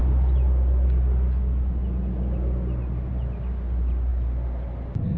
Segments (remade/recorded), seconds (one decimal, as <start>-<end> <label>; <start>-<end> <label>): 0.0-5.2 recorded

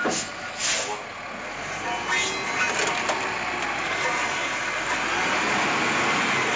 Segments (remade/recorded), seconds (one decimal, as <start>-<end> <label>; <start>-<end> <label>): 0.0-6.6 recorded

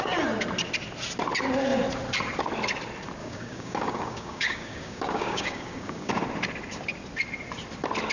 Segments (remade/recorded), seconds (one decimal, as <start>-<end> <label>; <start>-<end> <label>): 0.0-3.2 recorded; 3.2-6.1 remade; 6.1-8.1 recorded

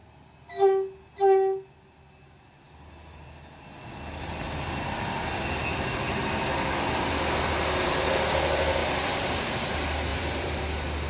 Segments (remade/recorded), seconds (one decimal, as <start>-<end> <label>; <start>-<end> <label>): 0.0-8.8 recorded; 8.8-9.7 remade; 9.7-10.1 recorded; 10.1-10.6 remade; 10.6-11.1 recorded

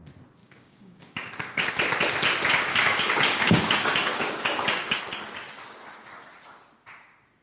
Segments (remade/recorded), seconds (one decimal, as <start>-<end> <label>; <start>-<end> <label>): 0.0-0.4 recorded; 0.4-1.7 remade; 1.7-2.7 recorded; 2.7-5.0 remade; 5.0-7.4 recorded